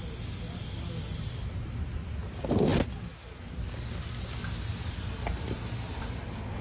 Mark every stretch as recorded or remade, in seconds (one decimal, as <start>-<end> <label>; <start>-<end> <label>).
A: 0.0-6.6 recorded